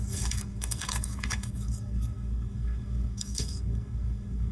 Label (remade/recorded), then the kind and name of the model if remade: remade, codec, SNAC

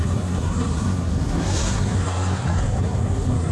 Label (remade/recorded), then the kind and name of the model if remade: remade, codec, SNAC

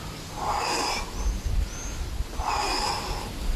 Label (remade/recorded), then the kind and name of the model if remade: recorded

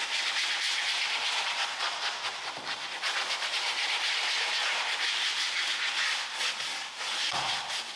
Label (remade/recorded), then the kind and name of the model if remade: recorded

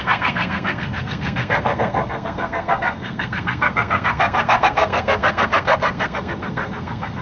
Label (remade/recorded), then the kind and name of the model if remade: remade, codec, SNAC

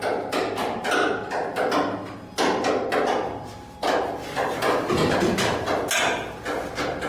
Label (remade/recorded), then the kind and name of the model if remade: recorded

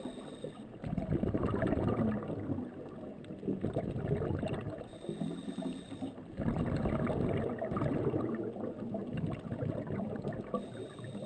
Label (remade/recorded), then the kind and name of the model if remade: recorded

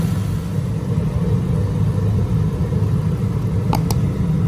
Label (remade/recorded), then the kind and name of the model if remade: recorded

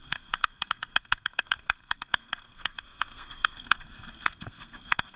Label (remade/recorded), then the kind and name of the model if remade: remade, codec, SNAC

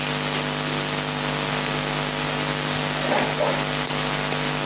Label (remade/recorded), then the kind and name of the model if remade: recorded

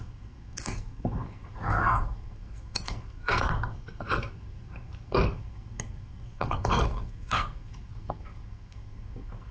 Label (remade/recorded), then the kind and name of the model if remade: remade, codec, SNAC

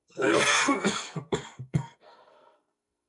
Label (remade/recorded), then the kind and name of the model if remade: remade, codec, SNAC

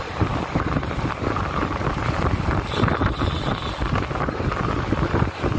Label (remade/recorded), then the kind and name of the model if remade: recorded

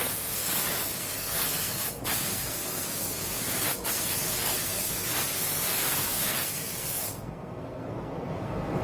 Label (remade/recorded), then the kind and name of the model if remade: remade, codec, SNAC